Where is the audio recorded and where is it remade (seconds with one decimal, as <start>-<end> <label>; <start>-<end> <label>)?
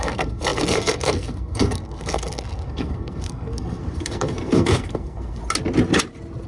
0.0-5.4 remade; 5.4-6.5 recorded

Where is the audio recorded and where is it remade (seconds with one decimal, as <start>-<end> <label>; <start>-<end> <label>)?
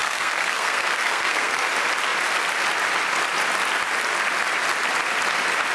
0.0-1.7 remade; 1.7-5.7 recorded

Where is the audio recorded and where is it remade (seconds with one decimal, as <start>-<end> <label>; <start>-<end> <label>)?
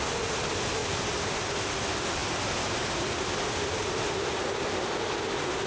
0.0-5.7 recorded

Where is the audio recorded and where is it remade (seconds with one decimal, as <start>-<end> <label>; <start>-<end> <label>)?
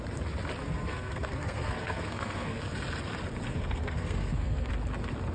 0.0-0.6 recorded; 0.6-2.6 remade; 2.6-3.5 recorded; 3.5-4.7 remade; 4.7-5.3 recorded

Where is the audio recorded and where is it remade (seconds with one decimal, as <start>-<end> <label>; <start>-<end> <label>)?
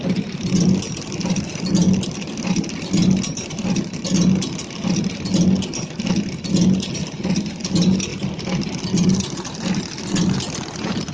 0.0-11.1 recorded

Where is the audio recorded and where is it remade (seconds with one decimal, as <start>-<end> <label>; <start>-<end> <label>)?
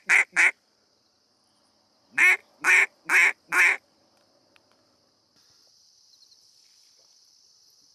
0.0-7.9 recorded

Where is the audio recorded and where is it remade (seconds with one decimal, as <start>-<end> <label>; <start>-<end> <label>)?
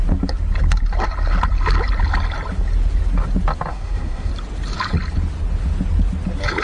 0.0-3.7 recorded; 3.7-4.3 remade; 4.3-6.6 recorded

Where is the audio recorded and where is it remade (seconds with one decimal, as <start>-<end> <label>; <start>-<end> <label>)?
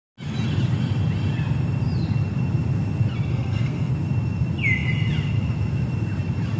0.0-3.3 recorded; 3.3-3.9 remade; 3.9-6.6 recorded